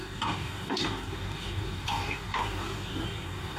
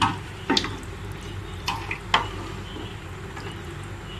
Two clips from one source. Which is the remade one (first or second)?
first